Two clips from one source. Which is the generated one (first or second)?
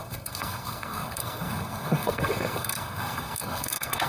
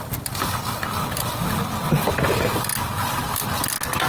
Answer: first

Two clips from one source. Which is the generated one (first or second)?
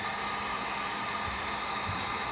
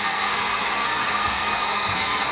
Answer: second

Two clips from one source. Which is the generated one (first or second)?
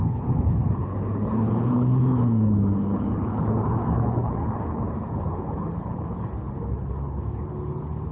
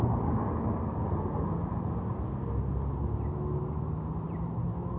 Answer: first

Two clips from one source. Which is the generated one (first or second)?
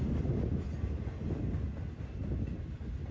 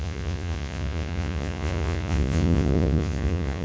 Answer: second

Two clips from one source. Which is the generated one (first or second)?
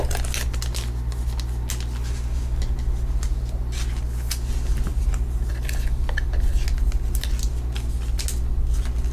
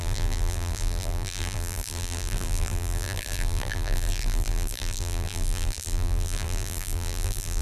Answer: second